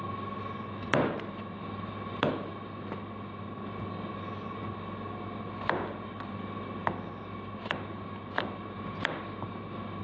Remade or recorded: recorded